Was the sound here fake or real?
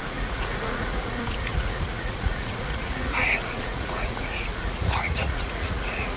fake